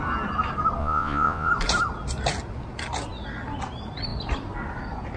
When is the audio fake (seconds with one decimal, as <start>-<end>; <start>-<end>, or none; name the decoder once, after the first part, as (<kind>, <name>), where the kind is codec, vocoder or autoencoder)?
0.8-1.5 (vocoder, Vocos)

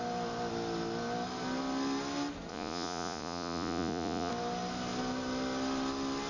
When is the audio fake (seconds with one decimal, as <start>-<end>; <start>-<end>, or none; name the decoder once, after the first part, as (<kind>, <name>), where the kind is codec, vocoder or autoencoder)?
2.5-4.3 (vocoder, Vocos)

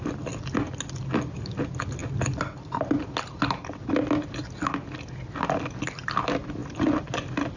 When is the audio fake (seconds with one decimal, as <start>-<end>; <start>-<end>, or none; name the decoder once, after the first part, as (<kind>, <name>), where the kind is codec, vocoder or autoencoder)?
none

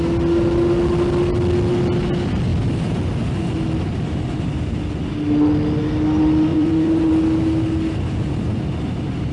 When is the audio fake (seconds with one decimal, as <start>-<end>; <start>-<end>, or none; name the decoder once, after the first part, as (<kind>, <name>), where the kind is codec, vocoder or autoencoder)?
6.5-7.1 (vocoder, Vocos)

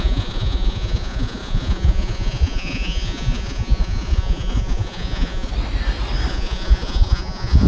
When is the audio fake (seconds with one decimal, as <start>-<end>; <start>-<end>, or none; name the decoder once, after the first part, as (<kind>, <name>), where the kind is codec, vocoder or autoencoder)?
0.0-5.5 (vocoder, Vocos); 6.3-7.7

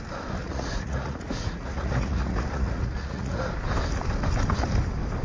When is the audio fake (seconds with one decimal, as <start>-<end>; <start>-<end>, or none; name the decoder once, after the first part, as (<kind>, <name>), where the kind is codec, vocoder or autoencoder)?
0.4-3.5 (vocoder, Vocos)

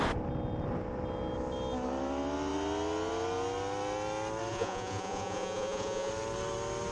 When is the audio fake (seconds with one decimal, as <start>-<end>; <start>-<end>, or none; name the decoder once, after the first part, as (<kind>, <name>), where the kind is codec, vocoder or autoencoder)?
4.5-6.1 (vocoder, Vocos)

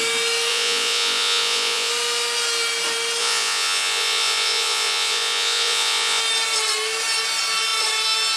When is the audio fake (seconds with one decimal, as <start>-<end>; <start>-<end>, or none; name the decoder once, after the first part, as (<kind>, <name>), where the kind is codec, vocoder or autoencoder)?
0.5-1.9 (vocoder, Vocos); 3.2-6.2